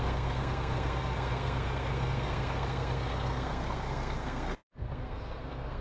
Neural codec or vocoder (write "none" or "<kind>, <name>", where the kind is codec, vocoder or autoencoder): codec, SNAC